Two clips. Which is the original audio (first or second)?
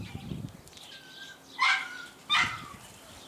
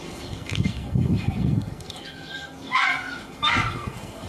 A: first